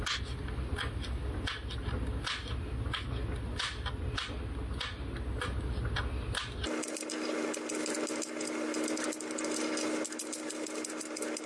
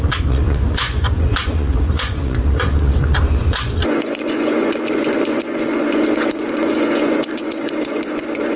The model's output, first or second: second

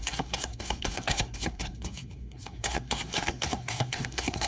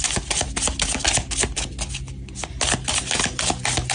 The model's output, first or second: first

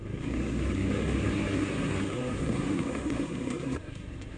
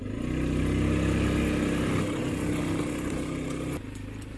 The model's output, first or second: first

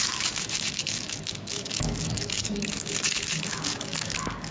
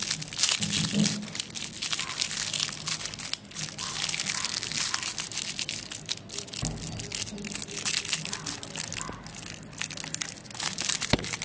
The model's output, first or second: first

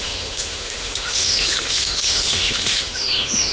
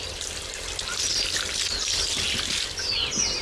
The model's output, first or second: first